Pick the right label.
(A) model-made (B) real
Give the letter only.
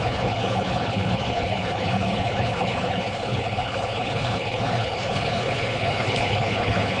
A